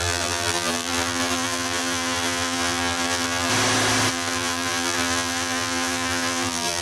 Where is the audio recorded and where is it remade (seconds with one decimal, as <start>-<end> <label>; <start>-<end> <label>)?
0.0-3.5 remade; 3.5-4.1 recorded; 4.1-6.8 remade